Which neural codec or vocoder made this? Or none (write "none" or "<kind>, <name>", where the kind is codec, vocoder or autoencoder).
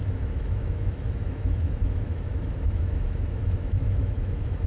autoencoder, DAC-VAE